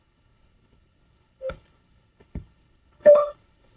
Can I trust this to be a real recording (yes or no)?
no